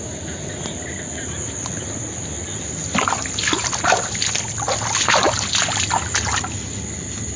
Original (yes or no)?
yes